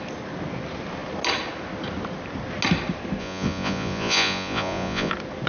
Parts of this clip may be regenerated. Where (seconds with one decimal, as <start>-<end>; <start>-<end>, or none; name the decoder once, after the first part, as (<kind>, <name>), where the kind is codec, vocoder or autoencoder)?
3.2-5.1 (vocoder, Vocos)